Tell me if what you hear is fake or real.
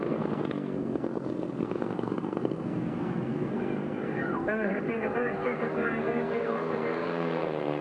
fake